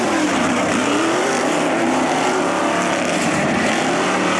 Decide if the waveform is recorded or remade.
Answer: remade